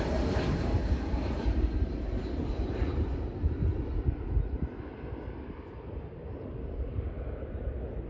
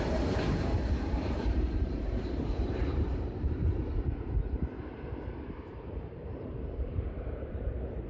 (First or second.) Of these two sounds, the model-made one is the second